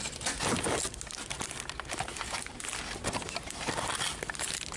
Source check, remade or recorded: recorded